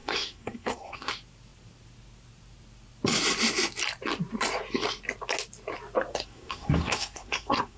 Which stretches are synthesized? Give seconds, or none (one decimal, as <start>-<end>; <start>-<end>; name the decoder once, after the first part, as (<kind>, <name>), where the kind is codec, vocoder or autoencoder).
0.0-1.1 (codec, SNAC); 6.1-7.8